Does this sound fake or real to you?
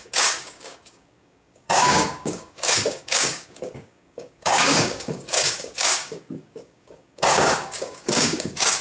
fake